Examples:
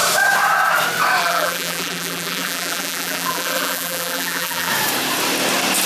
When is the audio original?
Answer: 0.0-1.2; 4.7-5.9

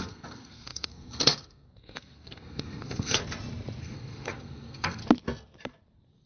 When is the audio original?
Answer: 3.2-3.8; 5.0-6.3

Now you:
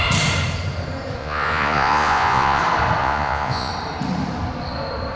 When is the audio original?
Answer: 0.0-1.2; 2.6-3.0; 3.7-5.2

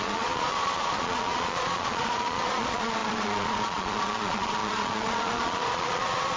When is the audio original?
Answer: none